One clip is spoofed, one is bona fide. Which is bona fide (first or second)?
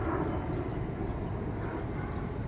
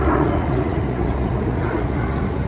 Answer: first